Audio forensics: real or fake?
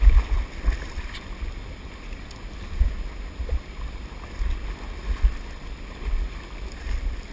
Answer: real